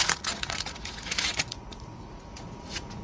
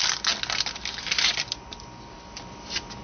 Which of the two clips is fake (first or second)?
first